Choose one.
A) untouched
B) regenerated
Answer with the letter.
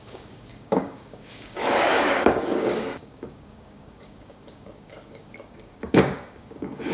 B